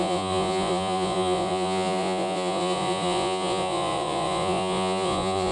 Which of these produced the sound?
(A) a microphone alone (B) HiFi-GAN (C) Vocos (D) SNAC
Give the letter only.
C